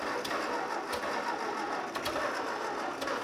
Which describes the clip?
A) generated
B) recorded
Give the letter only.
B